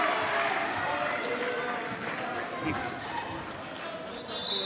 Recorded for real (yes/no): yes